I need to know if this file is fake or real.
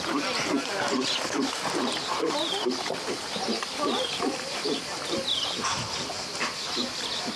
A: real